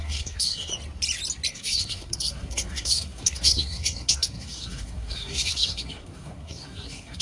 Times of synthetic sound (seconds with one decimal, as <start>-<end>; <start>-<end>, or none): 0.0-0.7; 1.5-7.2